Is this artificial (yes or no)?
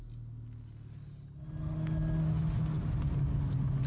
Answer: no